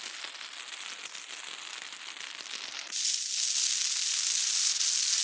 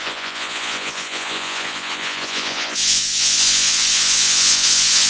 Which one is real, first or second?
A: first